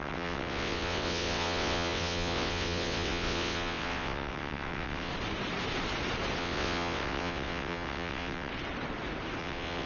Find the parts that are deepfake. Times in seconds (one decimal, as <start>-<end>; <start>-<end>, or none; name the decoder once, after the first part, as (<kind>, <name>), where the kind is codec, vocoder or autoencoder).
0.0-5.1 (vocoder, WaveNeXt); 6.4-8.5; 9.4-9.9